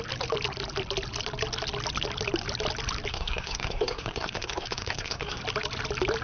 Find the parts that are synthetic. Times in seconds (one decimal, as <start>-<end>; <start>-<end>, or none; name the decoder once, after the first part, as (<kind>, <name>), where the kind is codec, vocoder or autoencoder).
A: 3.1-5.4 (codec, SNAC)